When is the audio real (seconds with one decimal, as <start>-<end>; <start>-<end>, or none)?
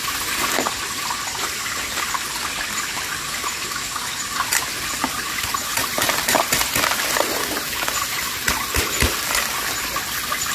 0.0-5.7; 6.4-10.5